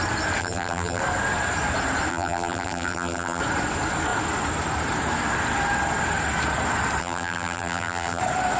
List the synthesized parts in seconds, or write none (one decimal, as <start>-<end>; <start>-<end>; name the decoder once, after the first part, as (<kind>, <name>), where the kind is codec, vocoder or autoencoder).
0.4-1.0 (vocoder, BigVGAN v2); 2.1-3.4; 7.0-8.2